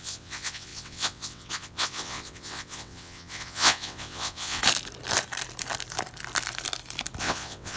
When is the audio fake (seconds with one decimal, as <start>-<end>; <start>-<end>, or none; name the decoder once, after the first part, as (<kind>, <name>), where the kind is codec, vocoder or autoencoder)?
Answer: 0.0-4.6 (vocoder, WaveNeXt); 7.2-7.8